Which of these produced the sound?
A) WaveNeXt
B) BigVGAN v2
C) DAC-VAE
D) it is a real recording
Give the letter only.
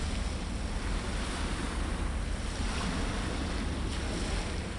D